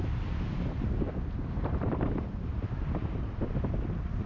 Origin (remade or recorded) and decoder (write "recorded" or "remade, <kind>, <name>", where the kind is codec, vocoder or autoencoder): remade, vocoder, BigVGAN v2